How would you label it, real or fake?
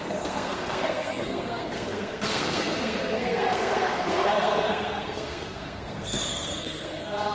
fake